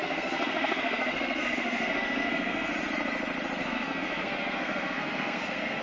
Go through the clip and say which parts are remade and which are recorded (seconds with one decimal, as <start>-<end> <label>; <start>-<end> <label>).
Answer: 0.0-2.7 remade; 2.7-3.6 recorded; 3.6-5.8 remade

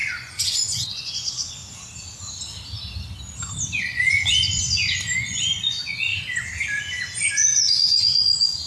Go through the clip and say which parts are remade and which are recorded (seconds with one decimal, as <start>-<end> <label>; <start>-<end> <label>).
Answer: 0.0-1.6 remade; 1.6-3.8 recorded; 3.8-6.1 remade; 6.1-7.2 recorded; 7.2-8.7 remade

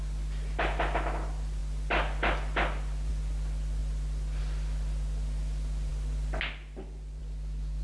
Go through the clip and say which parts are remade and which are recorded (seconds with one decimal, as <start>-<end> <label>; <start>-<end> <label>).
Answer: 0.0-7.8 recorded

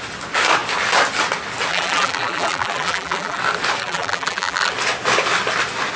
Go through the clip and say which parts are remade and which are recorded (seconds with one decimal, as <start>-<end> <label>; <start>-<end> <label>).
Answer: 0.0-1.7 recorded; 1.7-3.4 remade; 3.4-3.8 recorded; 3.8-4.7 remade; 4.7-6.0 recorded